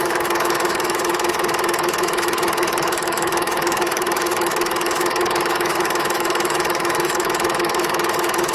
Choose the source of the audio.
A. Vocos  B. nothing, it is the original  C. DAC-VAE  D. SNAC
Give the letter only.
C